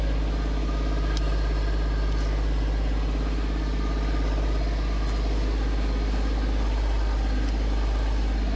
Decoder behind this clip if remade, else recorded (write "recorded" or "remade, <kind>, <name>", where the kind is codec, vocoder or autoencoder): recorded